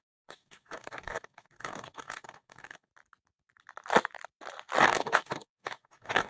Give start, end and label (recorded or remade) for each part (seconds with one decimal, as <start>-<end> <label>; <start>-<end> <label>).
0.0-2.9 remade; 2.9-4.8 recorded; 4.8-6.3 remade

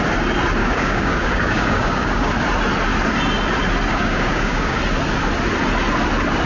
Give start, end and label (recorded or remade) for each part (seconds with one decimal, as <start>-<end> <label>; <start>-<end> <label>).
0.0-0.6 recorded; 0.6-2.3 remade; 2.3-3.9 recorded; 3.9-4.8 remade; 4.8-6.5 recorded

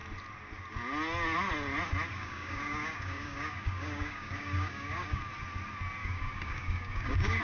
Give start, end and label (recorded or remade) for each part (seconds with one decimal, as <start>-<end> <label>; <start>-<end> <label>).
0.0-2.1 recorded; 2.1-5.2 remade; 5.2-6.0 recorded; 6.0-7.4 remade

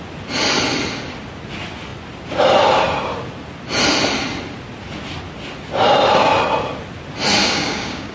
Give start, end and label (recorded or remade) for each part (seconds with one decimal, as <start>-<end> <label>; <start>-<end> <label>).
0.0-7.4 recorded; 7.4-8.1 remade

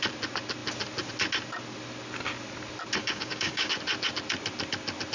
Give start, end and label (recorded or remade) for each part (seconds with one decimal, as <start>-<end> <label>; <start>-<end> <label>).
0.0-3.0 recorded; 3.0-3.7 remade; 3.7-5.1 recorded

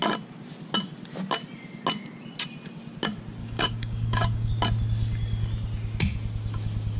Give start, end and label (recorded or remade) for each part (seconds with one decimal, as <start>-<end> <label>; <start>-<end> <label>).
0.0-3.4 recorded; 3.4-4.5 remade; 4.5-7.0 recorded

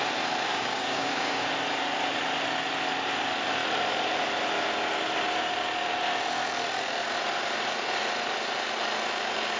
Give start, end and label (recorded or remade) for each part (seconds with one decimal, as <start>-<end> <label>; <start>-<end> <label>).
0.0-0.5 recorded; 0.5-1.5 remade; 1.5-9.6 recorded

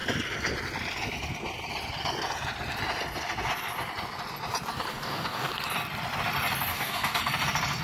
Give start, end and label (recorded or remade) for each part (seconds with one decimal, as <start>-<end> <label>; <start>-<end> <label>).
0.0-4.9 recorded; 4.9-5.5 remade; 5.5-6.7 recorded; 6.7-7.2 remade; 7.2-7.8 recorded